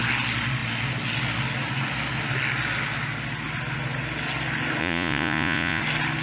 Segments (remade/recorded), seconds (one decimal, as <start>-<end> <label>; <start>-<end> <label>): 0.0-4.8 recorded; 4.8-5.8 remade; 5.8-6.2 recorded